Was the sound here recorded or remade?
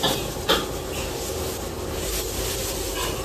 recorded